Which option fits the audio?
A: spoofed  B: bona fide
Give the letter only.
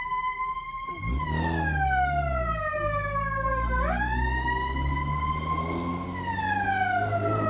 B